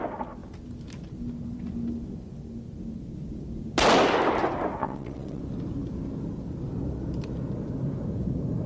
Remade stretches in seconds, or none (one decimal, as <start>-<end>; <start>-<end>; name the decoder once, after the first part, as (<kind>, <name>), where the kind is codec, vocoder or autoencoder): 4.8-5.4 (vocoder, WaveNeXt)